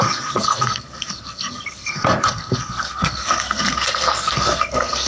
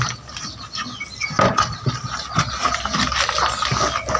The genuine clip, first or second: second